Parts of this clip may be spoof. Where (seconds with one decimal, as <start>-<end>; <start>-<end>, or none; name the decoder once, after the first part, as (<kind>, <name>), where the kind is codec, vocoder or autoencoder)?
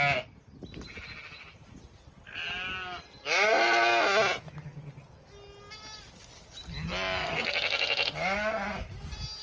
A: none